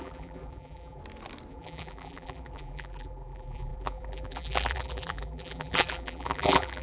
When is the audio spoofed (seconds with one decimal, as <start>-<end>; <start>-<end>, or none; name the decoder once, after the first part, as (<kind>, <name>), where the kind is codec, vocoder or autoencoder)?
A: 0.0-1.0 (vocoder, BigVGAN v2); 1.5-6.8